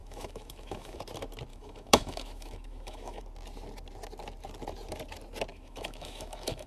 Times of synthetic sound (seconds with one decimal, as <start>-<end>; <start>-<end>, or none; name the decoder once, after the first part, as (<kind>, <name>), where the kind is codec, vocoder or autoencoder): 0.0-1.0 (autoencoder, DAC-VAE); 1.5-3.2; 5.5-6.7

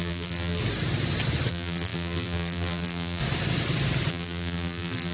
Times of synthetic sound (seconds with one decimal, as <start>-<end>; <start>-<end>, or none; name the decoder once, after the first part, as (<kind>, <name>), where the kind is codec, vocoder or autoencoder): 0.0-0.6 (vocoder, BigVGAN v2); 1.5-3.2; 4.1-5.1

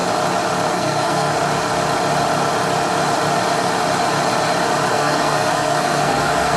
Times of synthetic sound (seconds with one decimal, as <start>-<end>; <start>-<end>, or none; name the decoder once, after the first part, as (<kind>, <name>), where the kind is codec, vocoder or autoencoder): 0.7-1.3 (codec, SNAC); 4.9-6.6

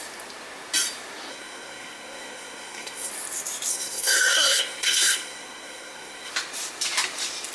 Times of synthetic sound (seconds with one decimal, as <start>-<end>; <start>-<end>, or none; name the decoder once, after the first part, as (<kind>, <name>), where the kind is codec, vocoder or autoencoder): 1.3-3.1 (codec, SNAC); 3.7-6.3